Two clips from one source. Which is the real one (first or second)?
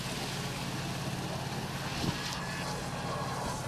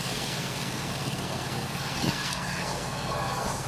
first